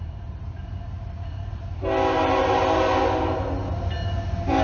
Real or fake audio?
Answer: real